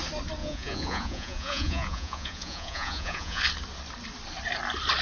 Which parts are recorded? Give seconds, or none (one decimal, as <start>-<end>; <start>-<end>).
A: 0.0-0.4; 3.4-5.0